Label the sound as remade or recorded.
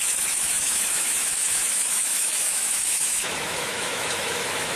remade